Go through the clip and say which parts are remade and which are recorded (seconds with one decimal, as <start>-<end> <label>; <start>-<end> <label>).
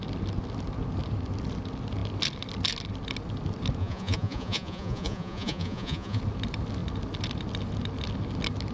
0.0-3.8 recorded; 3.8-6.2 remade; 6.2-8.7 recorded